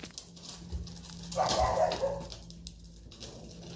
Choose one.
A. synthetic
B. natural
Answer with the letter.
B